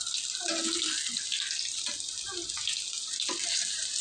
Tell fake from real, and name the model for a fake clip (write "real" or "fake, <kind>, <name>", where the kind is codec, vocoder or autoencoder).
real